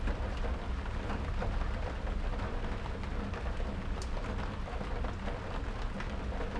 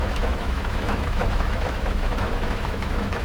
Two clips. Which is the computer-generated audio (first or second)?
second